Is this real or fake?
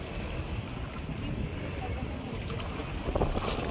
real